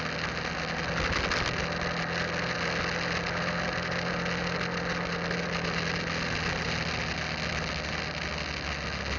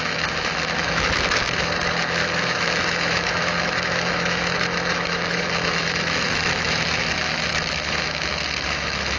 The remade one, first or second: second